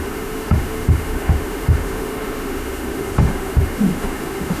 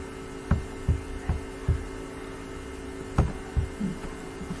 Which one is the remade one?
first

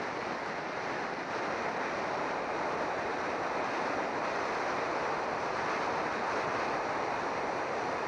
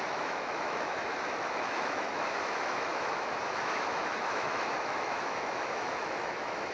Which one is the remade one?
second